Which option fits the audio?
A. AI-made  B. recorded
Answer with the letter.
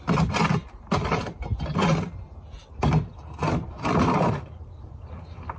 B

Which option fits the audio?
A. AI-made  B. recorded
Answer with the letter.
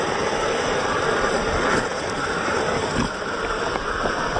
A